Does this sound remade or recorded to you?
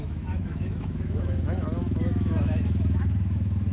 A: remade